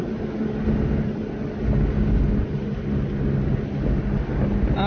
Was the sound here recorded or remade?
recorded